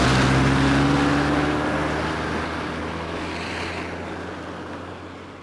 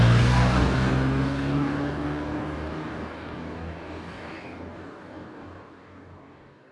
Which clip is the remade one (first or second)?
second